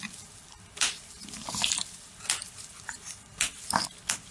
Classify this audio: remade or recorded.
recorded